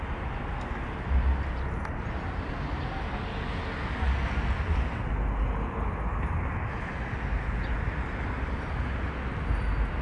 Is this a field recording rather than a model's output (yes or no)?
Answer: yes